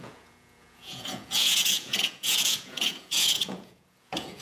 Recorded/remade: remade